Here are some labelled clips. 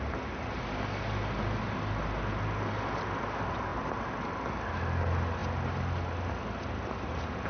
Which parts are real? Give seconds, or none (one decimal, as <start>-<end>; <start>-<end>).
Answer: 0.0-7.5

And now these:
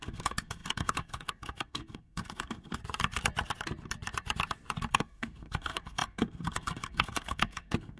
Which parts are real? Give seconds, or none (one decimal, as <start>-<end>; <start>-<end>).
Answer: 2.8-4.9

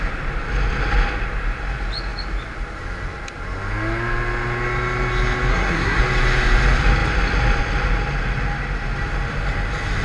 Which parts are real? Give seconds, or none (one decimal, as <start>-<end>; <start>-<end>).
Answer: 0.0-5.5; 6.0-10.0

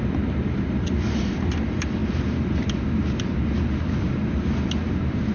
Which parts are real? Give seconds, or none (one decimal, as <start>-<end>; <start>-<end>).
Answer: 0.0-5.3

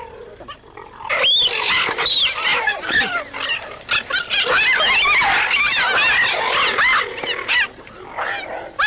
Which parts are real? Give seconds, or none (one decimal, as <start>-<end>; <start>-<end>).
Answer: 0.0-8.9

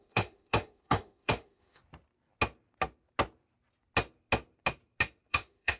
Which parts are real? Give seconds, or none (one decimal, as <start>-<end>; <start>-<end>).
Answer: 1.8-5.3

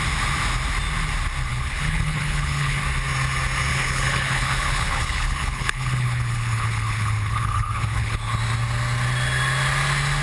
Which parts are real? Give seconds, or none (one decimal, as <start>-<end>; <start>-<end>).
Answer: 0.0-1.5; 2.8-3.7; 8.4-10.2

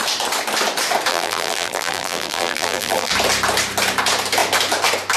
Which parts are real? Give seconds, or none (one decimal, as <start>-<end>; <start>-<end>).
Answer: 0.0-1.1; 3.1-5.2